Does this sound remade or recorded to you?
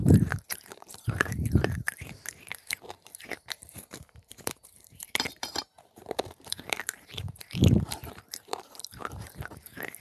remade